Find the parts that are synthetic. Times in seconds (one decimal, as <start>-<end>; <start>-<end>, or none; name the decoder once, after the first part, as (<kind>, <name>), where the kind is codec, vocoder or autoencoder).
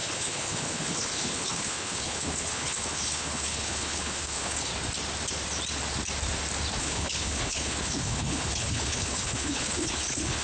0.0-4.7 (codec, HILCodec); 6.8-10.4